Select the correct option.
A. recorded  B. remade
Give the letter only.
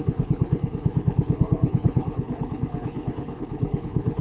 B